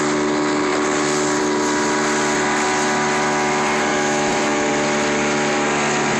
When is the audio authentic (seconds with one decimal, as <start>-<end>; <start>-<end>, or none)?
0.0-3.9; 4.7-6.2